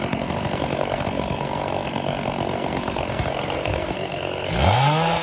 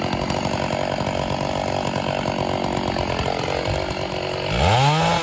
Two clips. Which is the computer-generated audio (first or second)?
first